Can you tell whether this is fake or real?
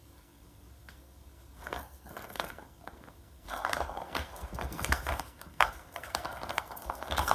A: fake